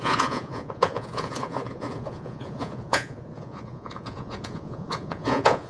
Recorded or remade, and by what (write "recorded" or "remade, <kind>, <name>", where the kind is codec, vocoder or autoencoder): remade, vocoder, Vocos